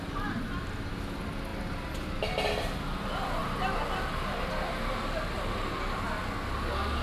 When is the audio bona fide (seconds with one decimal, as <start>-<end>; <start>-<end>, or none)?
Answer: 0.0-7.0